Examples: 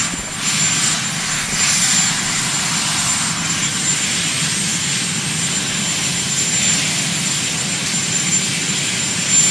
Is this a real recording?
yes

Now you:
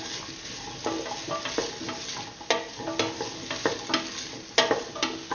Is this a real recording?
yes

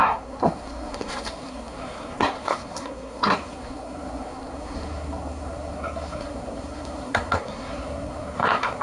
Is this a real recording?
no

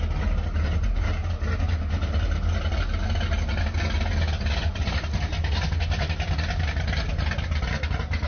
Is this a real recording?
yes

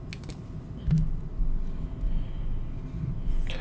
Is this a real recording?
yes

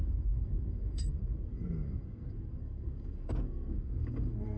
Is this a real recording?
no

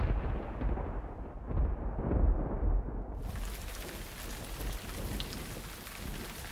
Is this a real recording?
yes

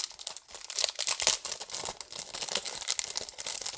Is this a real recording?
yes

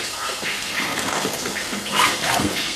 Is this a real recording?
no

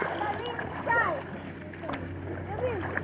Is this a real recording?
yes